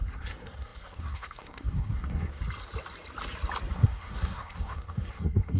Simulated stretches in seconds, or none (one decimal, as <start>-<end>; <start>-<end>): 0.0-2.4; 3.7-5.6